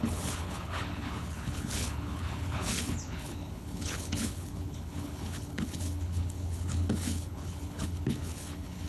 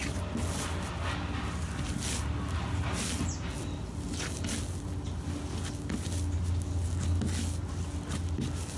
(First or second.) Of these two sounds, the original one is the second